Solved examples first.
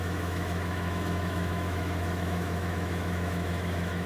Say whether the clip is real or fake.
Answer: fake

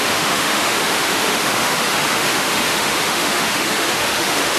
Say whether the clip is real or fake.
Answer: fake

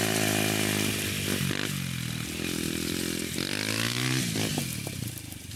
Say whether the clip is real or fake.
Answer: real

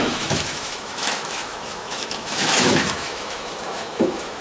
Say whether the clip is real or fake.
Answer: fake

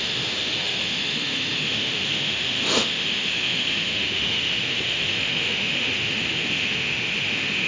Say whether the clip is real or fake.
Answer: fake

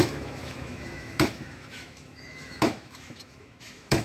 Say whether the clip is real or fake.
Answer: fake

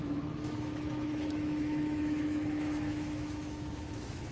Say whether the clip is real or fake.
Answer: fake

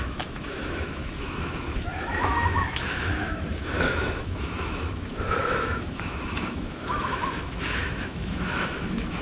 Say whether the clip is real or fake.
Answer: fake